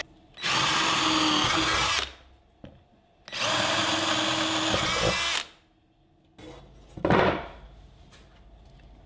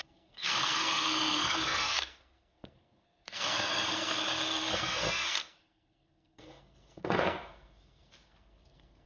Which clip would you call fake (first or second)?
second